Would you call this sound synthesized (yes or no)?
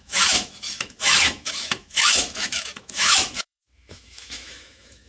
yes